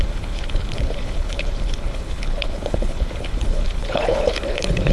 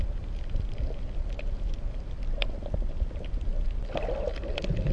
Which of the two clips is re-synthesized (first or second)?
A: first